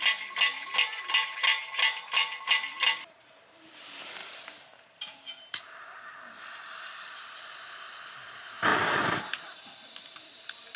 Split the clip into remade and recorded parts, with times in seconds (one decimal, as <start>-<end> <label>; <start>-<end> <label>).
0.0-4.2 recorded; 4.2-7.0 remade; 7.0-8.7 recorded; 8.7-10.3 remade; 10.3-10.8 recorded